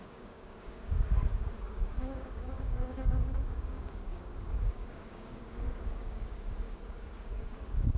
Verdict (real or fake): fake